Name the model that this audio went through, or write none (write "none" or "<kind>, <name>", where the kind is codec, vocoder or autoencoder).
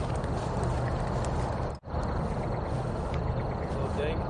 none